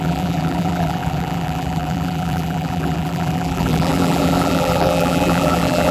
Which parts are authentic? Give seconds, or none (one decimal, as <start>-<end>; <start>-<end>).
none